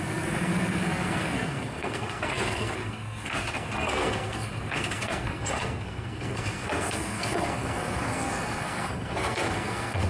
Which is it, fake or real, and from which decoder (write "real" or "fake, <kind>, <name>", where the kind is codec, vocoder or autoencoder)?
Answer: fake, codec, SNAC